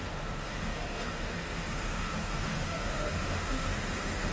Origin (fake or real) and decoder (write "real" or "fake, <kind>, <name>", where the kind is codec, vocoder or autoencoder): fake, autoencoder, DAC-VAE